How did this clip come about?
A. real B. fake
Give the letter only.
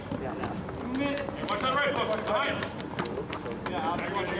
A